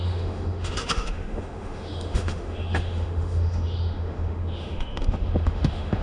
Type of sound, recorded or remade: remade